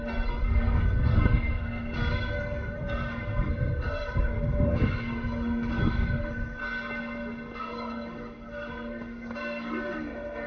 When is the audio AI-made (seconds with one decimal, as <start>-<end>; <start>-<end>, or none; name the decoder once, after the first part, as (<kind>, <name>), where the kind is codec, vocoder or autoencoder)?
0.0-6.6 (codec, SNAC); 7.6-10.5